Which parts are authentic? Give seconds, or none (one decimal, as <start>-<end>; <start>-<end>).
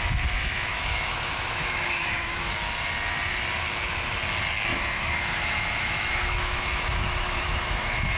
0.0-0.7; 2.5-4.7